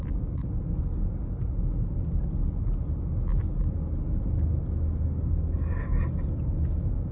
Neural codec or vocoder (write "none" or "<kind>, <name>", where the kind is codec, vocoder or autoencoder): none